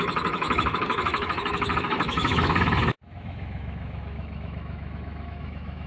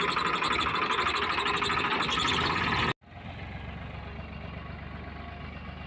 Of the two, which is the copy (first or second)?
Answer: first